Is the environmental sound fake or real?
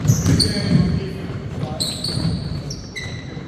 fake